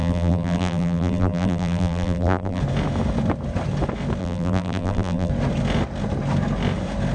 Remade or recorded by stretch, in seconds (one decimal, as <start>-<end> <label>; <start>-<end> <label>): 0.0-2.6 remade; 2.6-4.2 recorded; 4.2-5.3 remade; 5.3-7.1 recorded